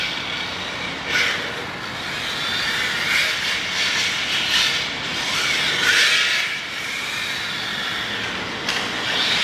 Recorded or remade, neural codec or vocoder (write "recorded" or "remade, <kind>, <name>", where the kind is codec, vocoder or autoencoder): recorded